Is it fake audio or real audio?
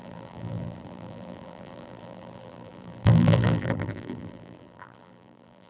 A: fake